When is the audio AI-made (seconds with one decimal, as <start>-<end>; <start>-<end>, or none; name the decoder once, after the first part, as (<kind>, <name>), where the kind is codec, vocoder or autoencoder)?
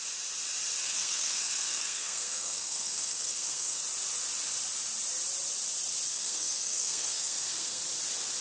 0.8-3.8 (codec, SNAC); 6.1-7.8